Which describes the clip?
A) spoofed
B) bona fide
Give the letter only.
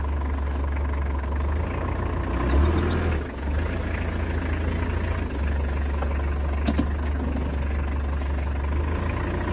B